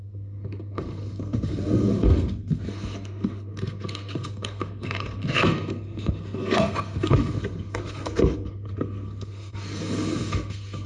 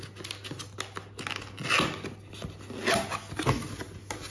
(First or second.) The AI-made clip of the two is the first